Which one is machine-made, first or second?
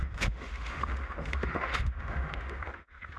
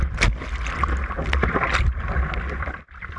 first